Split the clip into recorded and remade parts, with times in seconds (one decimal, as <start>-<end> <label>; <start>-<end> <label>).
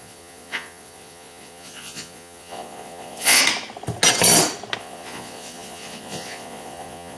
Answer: 0.0-3.4 remade; 3.4-4.8 recorded; 4.8-7.2 remade